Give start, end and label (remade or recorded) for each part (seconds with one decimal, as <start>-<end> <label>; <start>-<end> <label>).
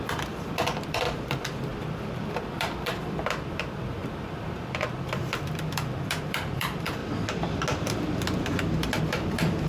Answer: 0.0-7.0 remade; 7.0-9.0 recorded; 9.0-9.7 remade